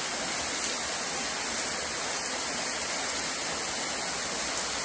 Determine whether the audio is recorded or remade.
recorded